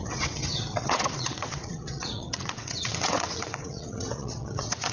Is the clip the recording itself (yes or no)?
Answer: no